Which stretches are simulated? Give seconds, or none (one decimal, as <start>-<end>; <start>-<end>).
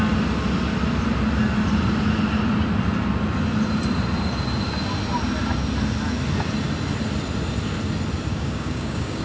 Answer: 8.3-9.2